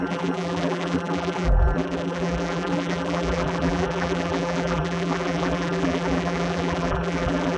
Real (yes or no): no